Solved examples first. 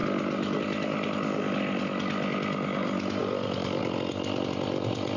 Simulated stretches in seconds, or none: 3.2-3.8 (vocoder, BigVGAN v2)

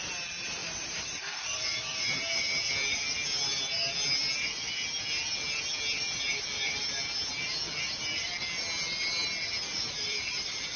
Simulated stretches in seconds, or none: 0.6-2.7 (vocoder, BigVGAN v2); 9.7-10.8

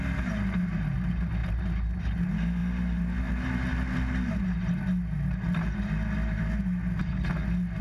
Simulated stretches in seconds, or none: none

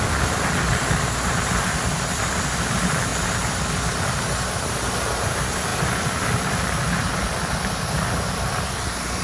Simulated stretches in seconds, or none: 0.0-3.1 (vocoder, BigVGAN v2); 4.6-5.7; 6.8-9.2

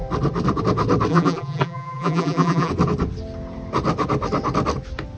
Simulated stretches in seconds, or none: 1.1-2.7 (vocoder, BigVGAN v2)

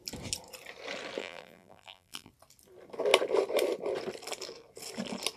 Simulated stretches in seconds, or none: 1.2-2.3 (vocoder, BigVGAN v2)